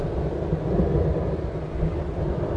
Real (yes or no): yes